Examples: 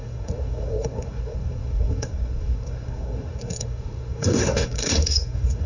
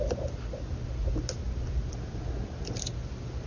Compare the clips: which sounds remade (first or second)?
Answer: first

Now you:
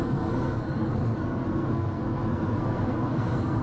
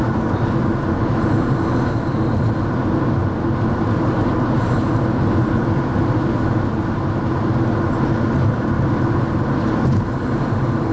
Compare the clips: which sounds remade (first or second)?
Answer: first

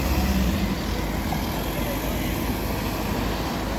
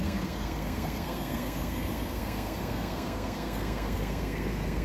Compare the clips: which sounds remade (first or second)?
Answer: second